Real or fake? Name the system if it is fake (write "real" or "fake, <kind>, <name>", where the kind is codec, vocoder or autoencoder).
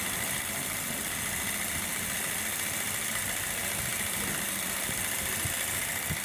real